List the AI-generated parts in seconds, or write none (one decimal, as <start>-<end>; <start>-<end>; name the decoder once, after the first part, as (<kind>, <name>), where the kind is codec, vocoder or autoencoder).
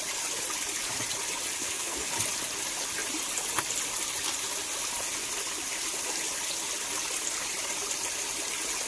1.6-2.1 (codec, SNAC)